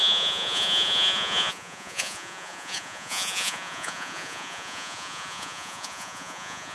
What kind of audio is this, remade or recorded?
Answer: remade